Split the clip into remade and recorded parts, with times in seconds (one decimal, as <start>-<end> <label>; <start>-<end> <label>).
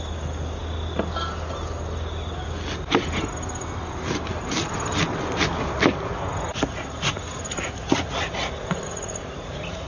0.0-6.5 recorded; 6.5-9.9 remade